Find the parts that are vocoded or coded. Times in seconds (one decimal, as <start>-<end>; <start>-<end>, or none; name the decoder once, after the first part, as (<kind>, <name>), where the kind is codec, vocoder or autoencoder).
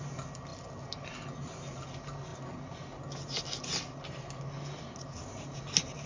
none